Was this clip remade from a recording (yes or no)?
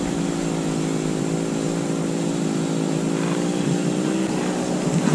no